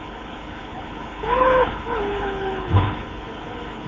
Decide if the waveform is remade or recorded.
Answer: remade